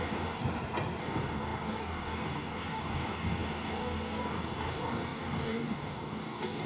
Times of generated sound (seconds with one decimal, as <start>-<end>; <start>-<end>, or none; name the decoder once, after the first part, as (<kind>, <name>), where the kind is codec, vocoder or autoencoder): 0.0-0.4 (codec, DAC); 1.0-6.7